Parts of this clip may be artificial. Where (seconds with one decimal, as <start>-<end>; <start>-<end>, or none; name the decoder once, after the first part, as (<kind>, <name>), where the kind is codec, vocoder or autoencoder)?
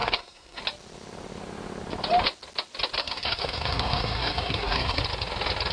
0.0-0.6 (codec, SNAC); 3.0-5.0